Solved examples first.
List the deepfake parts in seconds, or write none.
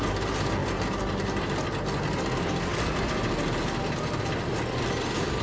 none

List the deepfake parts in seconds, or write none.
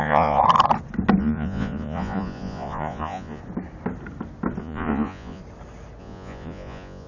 0.0-0.4 (vocoder, Vocos); 1.2-3.4; 4.6-5.4; 6.0-7.1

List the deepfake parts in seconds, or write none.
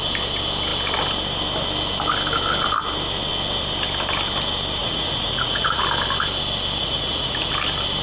4.8-5.8 (vocoder, Vocos); 6.8-7.5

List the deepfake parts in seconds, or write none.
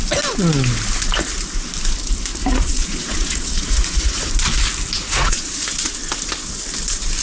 2.4-4.3 (vocoder, Vocos); 5.0-5.9